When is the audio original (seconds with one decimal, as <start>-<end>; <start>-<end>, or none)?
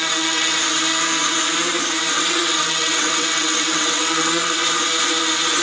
0.5-2.1; 4.6-5.6